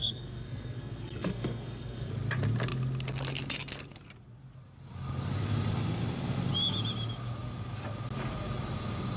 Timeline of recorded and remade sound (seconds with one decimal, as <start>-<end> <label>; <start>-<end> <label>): 0.0-2.1 remade; 2.1-9.2 recorded